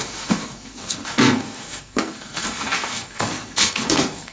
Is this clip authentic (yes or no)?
no